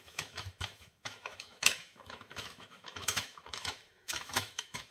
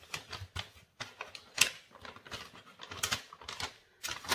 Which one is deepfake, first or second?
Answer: first